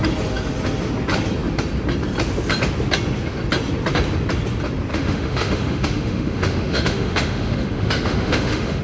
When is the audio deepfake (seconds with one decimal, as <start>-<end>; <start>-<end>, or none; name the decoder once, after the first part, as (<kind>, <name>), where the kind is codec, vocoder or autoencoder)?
4.9-8.8 (autoencoder, DAC-VAE)